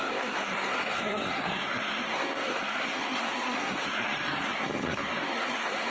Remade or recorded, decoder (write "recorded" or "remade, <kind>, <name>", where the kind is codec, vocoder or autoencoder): remade, codec, SNAC